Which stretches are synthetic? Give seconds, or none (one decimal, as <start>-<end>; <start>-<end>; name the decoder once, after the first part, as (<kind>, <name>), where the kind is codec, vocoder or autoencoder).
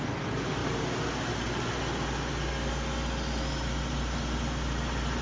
none